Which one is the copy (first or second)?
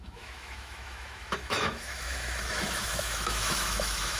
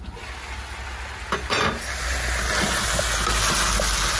first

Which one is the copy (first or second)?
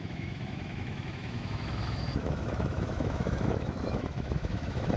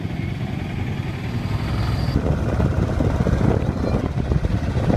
first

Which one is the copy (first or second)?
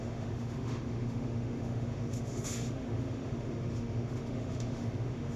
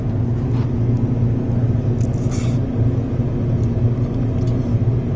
first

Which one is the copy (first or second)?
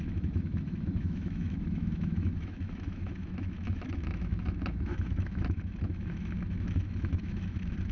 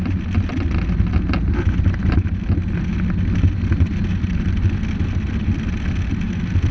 first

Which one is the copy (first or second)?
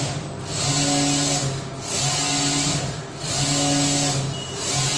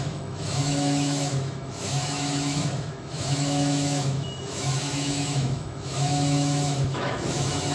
second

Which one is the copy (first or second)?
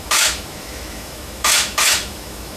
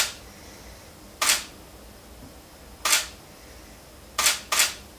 first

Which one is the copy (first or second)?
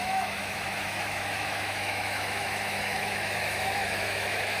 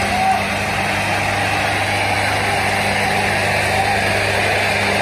first